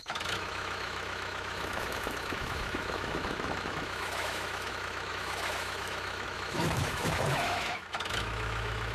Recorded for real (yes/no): no